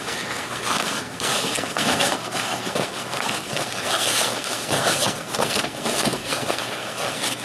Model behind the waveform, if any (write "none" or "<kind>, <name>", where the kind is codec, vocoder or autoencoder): codec, SNAC